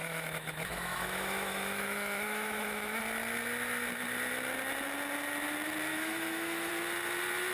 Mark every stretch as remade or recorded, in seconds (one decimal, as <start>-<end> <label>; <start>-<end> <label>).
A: 0.0-3.0 remade; 3.0-5.9 recorded; 5.9-6.7 remade; 6.7-7.5 recorded